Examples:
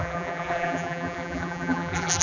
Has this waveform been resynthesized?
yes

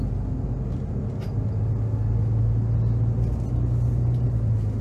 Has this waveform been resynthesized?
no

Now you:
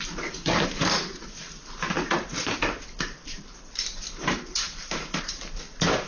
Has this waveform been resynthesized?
yes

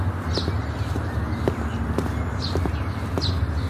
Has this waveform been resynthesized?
no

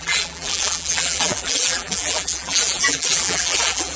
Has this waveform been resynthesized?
yes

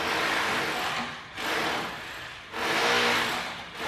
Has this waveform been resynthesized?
no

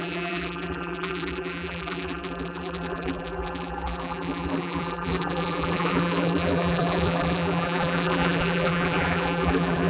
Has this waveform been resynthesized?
yes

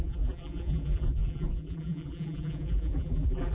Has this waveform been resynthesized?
yes